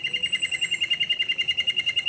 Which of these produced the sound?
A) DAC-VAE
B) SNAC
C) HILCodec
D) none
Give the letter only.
D